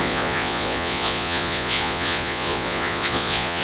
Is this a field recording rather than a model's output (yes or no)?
no